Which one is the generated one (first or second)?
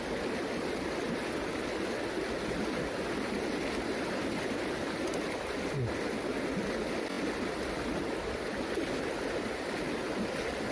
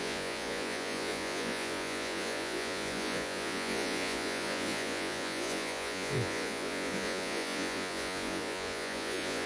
second